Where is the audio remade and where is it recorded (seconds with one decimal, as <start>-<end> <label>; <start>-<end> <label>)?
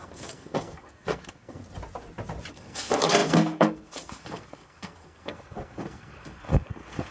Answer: 0.0-1.6 remade; 1.6-2.5 recorded; 2.5-7.1 remade